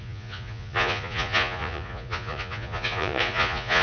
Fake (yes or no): yes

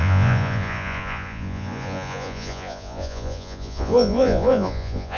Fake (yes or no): yes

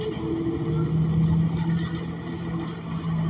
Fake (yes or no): no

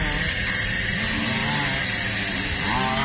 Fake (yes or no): no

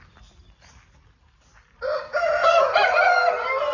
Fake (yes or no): no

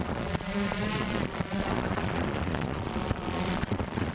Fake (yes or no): yes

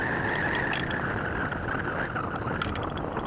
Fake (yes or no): no